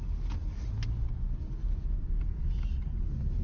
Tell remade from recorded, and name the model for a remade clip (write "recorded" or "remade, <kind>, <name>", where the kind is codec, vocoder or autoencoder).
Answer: recorded